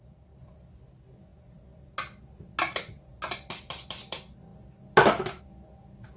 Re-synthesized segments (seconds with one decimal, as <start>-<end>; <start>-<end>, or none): none